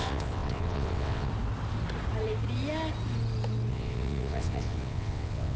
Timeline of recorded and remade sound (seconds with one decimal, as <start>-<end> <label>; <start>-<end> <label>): 0.0-1.3 remade; 1.3-3.7 recorded; 3.7-5.6 remade